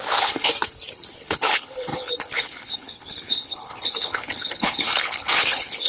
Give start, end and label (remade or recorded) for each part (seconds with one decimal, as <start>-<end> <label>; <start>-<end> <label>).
0.0-0.5 remade; 0.5-1.1 recorded; 1.1-5.9 remade